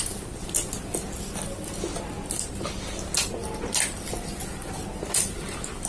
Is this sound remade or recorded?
recorded